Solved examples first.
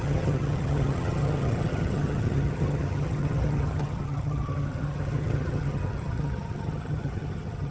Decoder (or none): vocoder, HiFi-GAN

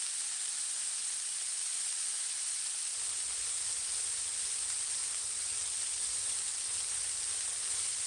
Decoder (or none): none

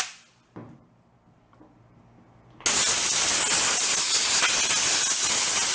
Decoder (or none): none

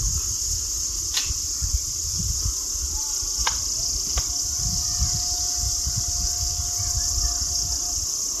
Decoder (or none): none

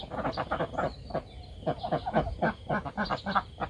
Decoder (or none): none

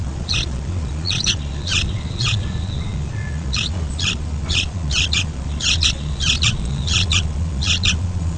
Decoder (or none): vocoder, Vocos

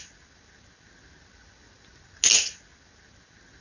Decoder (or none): none